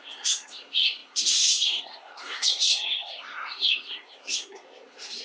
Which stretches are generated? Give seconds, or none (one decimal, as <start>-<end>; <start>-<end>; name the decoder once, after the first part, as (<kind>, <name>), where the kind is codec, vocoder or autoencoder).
0.0-5.2 (codec, SNAC)